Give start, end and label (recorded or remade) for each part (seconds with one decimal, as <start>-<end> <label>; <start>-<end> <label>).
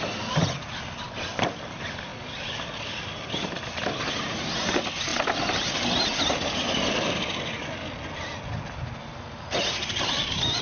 0.0-10.6 recorded